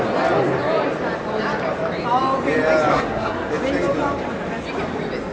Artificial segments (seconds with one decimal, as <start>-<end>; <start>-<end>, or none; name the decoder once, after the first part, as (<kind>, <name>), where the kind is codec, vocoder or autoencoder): 2.9-3.5 (codec, SNAC)